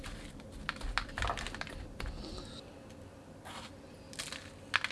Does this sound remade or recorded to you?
recorded